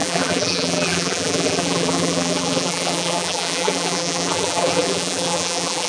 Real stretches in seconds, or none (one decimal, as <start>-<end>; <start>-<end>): none